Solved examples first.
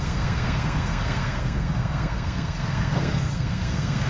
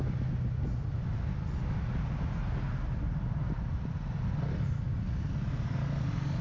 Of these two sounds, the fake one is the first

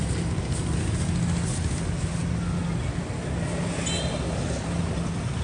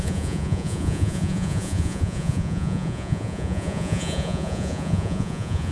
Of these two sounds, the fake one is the second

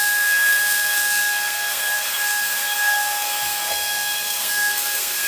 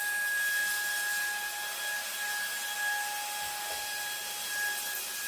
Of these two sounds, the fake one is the first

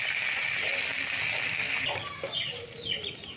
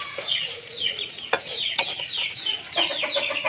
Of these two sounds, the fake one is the second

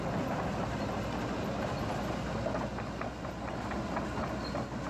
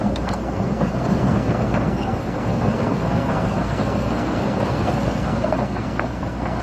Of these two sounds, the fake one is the second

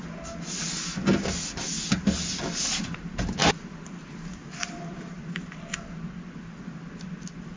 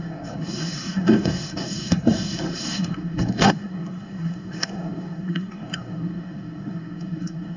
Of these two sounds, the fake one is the second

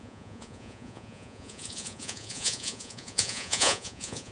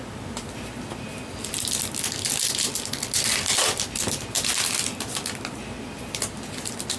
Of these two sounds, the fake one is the first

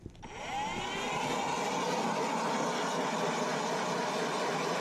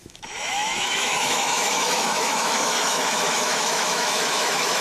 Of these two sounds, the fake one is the second